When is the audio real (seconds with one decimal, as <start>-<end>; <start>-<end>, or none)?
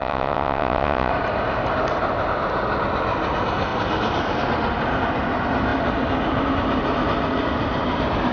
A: 1.1-8.3